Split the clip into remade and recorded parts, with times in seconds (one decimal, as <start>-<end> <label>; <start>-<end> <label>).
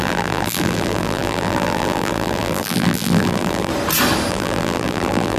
0.0-3.7 remade; 3.7-4.3 recorded; 4.3-5.4 remade